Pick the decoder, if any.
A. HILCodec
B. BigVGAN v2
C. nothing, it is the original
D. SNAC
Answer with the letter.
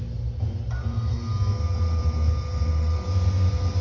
C